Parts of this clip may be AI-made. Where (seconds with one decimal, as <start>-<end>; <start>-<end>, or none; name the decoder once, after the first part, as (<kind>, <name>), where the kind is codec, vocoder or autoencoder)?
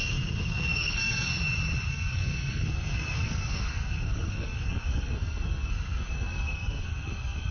0.0-1.3 (codec, SNAC); 1.9-7.5